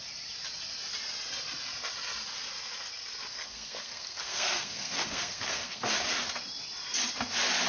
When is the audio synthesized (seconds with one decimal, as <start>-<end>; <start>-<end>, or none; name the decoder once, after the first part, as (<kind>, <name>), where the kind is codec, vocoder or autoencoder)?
3.3-5.9 (codec, SNAC)